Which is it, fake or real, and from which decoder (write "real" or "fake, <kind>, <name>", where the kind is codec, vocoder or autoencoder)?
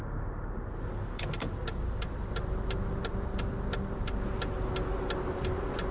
real